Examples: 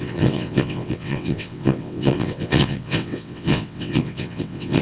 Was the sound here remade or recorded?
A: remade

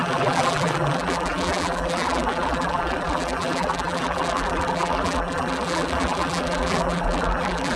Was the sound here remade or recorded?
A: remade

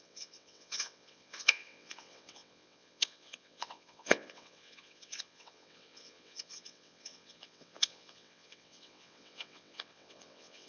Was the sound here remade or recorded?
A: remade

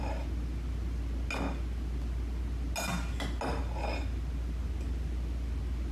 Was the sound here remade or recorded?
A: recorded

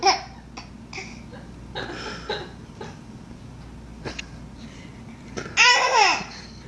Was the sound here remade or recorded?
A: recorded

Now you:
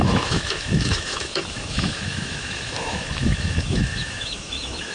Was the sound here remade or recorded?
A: remade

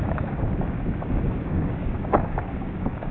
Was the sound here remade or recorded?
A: remade